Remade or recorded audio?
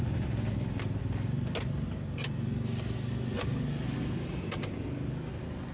recorded